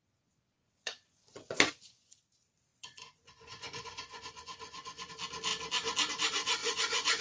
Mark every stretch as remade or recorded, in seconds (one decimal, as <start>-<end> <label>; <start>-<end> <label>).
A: 0.0-2.2 remade; 2.2-2.7 recorded; 2.7-5.1 remade; 5.1-6.6 recorded; 6.6-7.2 remade